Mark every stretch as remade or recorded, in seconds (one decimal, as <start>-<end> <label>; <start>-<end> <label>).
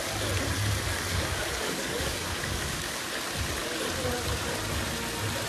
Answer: 0.0-1.1 recorded; 1.1-3.0 remade; 3.0-5.5 recorded